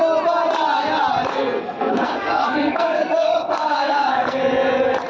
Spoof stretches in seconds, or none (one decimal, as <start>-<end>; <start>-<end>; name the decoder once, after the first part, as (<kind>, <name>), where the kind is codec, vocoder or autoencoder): 1.3-4.4 (codec, SNAC)

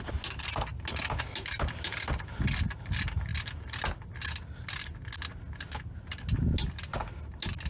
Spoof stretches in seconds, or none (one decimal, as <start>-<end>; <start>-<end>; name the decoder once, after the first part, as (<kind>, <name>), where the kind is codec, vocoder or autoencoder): none

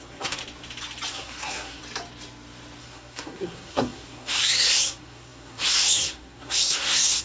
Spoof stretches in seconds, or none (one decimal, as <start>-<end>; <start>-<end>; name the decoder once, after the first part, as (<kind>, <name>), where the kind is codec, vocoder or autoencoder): 0.0-0.4 (codec, SNAC); 1.1-1.8; 2.8-7.2